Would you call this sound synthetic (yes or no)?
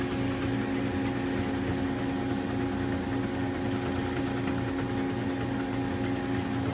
no